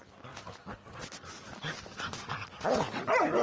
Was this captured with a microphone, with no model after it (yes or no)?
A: yes